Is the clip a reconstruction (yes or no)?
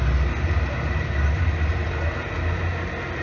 no